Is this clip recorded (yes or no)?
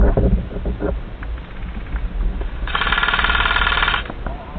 yes